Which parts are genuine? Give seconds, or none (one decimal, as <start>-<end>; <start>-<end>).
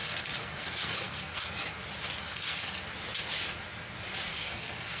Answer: 1.7-2.2; 2.8-4.3